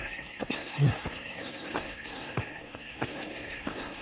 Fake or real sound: fake